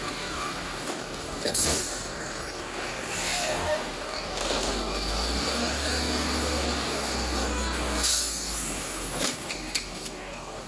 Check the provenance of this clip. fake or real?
fake